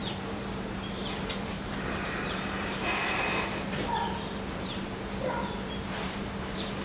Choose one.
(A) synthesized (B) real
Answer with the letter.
A